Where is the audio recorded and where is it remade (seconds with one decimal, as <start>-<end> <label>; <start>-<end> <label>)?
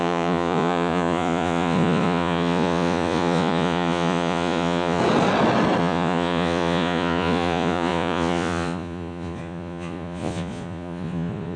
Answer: 0.0-5.0 remade; 5.0-5.8 recorded; 5.8-11.6 remade